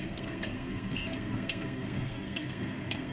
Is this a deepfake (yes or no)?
yes